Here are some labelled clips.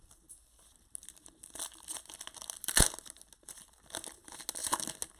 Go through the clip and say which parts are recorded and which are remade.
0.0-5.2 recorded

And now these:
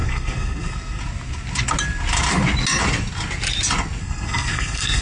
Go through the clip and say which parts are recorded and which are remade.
0.0-1.0 remade; 1.0-4.0 recorded; 4.0-5.0 remade

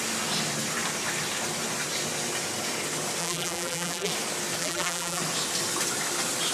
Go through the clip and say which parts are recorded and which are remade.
0.0-3.2 recorded; 3.2-4.1 remade; 4.1-4.6 recorded; 4.6-5.2 remade; 5.2-6.5 recorded